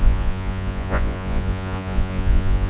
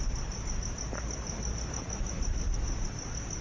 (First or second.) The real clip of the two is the second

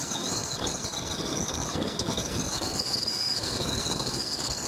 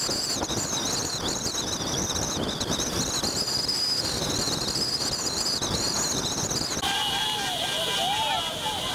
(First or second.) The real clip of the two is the second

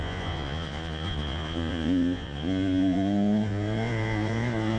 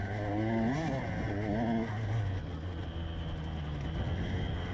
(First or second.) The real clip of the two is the second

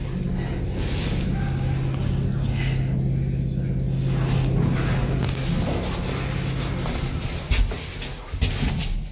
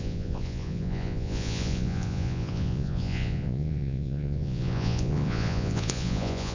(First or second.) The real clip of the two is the first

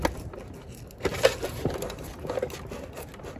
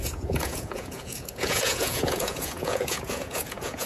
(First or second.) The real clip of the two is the first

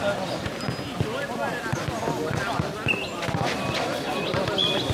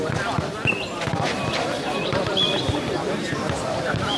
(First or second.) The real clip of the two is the first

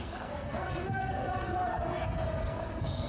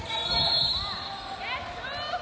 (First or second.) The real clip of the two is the second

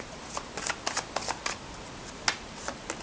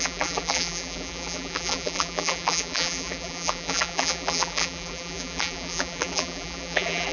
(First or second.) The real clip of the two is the first